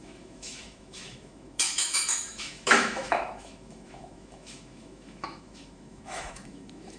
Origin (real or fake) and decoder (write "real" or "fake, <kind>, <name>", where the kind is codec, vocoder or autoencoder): fake, autoencoder, DAC-VAE